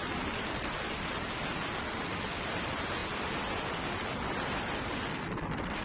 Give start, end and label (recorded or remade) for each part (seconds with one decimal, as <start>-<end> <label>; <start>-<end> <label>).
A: 0.0-5.8 recorded